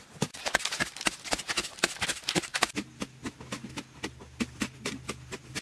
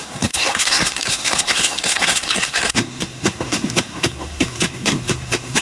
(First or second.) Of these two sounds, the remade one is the second